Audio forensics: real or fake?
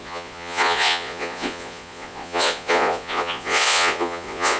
fake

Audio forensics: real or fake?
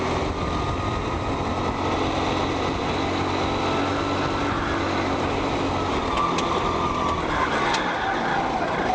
real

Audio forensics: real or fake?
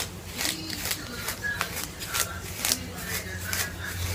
real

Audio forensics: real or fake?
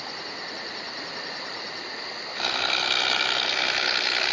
real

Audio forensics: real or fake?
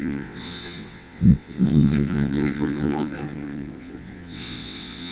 fake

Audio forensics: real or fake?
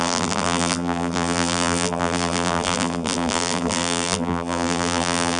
fake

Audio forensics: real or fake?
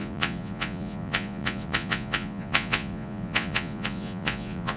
fake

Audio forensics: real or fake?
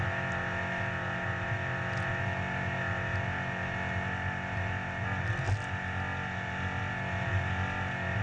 real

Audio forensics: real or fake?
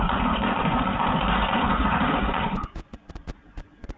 fake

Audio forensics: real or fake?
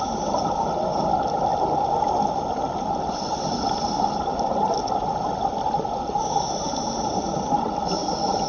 real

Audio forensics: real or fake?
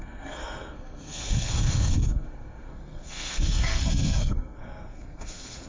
fake